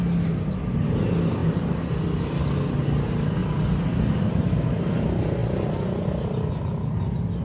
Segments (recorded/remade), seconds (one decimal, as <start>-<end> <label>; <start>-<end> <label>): 0.0-7.4 recorded